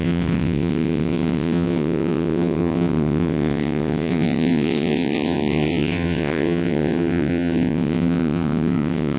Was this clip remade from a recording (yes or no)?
yes